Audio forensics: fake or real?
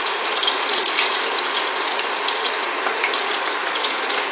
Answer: fake